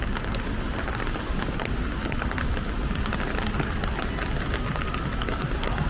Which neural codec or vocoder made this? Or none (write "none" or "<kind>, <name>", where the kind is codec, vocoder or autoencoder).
none